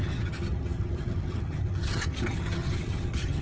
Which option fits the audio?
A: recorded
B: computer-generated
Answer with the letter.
B